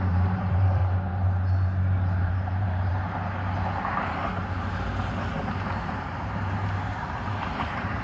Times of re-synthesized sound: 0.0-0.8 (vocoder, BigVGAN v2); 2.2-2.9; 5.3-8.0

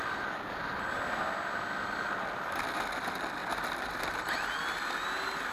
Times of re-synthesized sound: 3.4-4.0 (vocoder, BigVGAN v2)

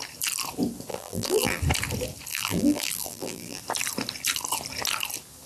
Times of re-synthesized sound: 0.9-1.6 (vocoder, BigVGAN v2); 2.3-3.6

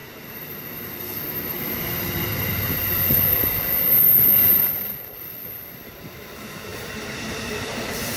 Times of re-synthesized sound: 0.0-8.2 (vocoder, BigVGAN v2)

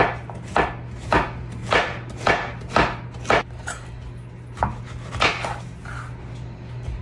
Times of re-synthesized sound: none

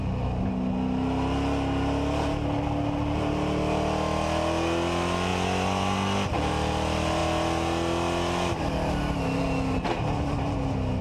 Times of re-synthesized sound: none

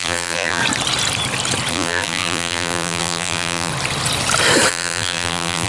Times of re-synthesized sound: 0.0-0.6 (vocoder, BigVGAN v2); 1.7-3.7; 4.7-5.7